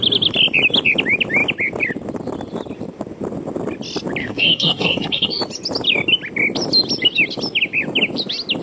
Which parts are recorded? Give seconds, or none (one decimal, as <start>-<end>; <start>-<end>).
0.0-4.2; 5.4-8.6

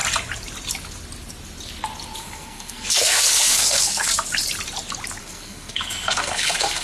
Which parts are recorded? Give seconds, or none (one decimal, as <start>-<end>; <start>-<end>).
0.0-2.2; 4.1-5.2

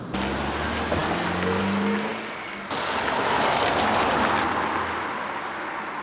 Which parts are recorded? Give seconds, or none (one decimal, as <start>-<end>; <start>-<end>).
0.0-6.0

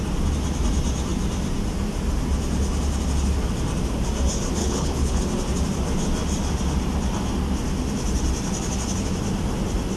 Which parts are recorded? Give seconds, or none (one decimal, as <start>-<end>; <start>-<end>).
0.0-4.6; 5.2-10.0

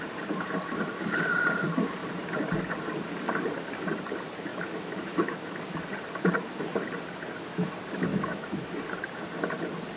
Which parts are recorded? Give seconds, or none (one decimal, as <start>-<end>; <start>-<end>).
0.0-4.5; 5.6-8.1; 8.8-10.0

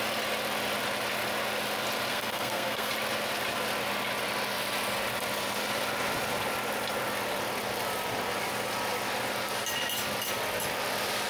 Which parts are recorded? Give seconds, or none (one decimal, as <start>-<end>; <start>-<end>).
0.0-2.1; 2.9-11.3

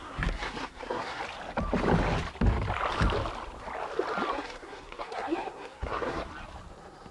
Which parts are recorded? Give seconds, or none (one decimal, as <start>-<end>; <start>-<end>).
1.2-4.3; 6.2-7.1

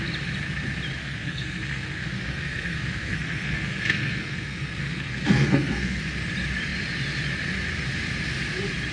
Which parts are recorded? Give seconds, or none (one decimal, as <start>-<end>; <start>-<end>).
0.0-1.0; 6.0-8.9